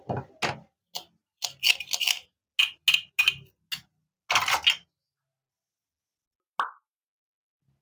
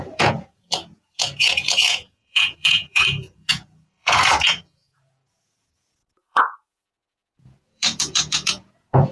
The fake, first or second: second